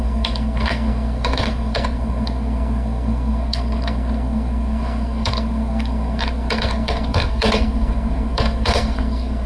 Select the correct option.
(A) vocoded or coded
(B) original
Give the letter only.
A